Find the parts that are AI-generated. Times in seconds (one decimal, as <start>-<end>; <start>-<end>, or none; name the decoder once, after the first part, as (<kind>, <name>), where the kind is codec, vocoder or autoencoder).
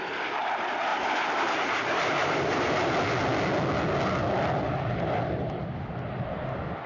0.9-2.9 (vocoder, BigVGAN v2)